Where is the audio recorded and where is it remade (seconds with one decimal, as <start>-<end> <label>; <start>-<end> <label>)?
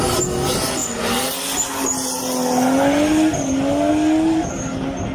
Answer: 0.0-5.1 recorded